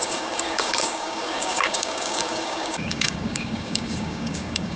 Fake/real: fake